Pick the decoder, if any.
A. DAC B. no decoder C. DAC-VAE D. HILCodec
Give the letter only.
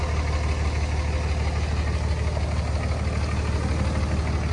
B